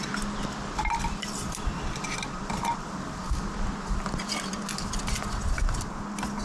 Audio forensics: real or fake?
real